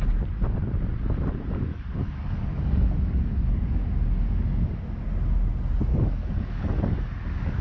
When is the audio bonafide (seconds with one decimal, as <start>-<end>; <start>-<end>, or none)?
0.0-1.7; 3.8-5.9